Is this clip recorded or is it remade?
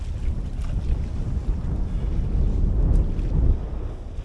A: recorded